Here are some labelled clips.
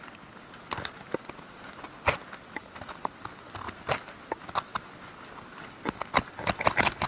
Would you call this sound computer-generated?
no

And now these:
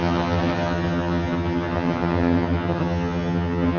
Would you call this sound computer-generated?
yes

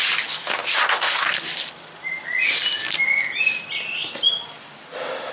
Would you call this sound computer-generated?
no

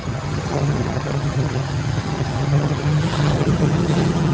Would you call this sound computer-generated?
yes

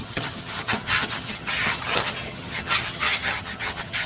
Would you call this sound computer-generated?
yes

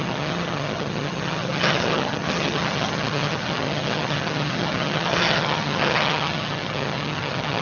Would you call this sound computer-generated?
yes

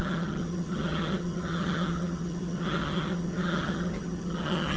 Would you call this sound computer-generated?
yes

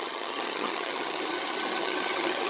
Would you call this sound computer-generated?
yes